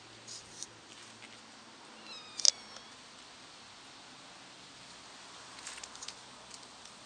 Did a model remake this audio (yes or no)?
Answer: no